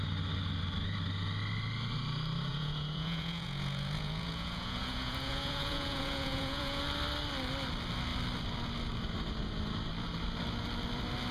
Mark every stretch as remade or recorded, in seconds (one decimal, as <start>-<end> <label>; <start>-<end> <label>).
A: 0.0-2.5 recorded; 2.5-6.8 remade; 6.8-11.3 recorded